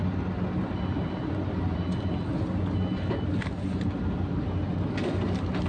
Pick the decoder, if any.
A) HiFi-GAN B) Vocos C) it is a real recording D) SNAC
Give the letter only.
C